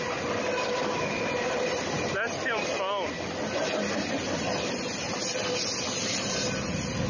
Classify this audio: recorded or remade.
recorded